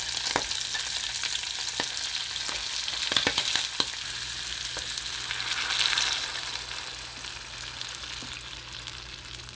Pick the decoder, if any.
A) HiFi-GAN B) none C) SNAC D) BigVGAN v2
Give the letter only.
B